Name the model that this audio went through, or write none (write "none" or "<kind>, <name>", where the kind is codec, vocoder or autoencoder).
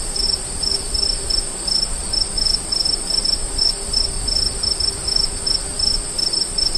none